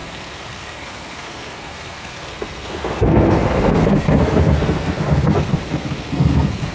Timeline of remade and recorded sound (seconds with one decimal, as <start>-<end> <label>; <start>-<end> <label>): 0.0-6.7 remade